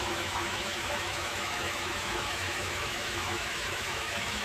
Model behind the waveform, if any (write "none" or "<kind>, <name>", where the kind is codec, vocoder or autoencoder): autoencoder, DAC-VAE